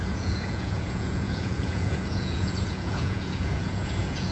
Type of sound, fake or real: fake